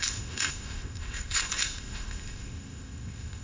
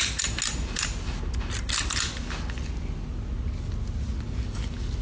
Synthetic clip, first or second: first